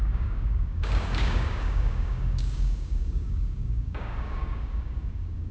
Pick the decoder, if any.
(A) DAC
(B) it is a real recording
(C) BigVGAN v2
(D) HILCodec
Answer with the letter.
A